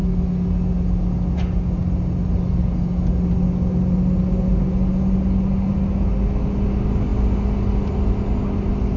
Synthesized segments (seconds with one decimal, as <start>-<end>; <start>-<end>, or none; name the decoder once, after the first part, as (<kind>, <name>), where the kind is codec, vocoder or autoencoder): none